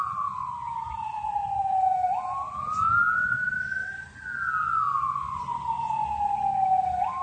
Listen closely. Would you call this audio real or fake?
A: real